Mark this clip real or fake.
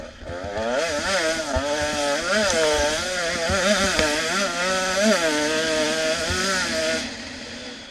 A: fake